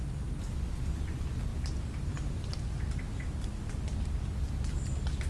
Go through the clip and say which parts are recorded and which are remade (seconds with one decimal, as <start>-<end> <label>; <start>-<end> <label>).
0.0-5.3 recorded